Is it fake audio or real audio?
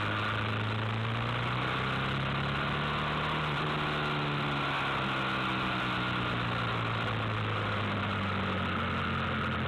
real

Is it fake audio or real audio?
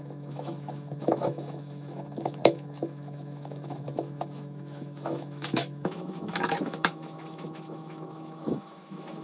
fake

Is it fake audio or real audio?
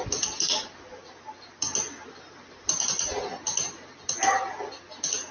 fake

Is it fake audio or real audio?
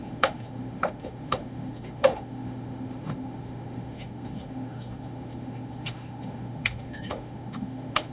fake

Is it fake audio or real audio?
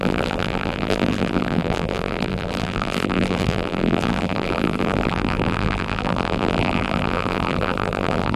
fake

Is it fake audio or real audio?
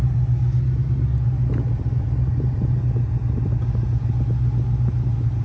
real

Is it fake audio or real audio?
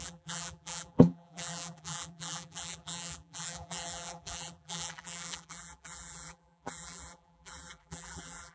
fake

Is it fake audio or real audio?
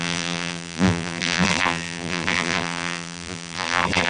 fake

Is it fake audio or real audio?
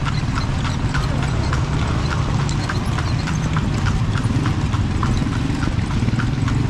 real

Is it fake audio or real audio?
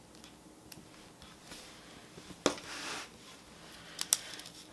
real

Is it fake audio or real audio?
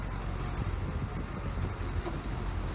real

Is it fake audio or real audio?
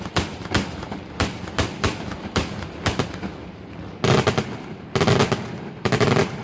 real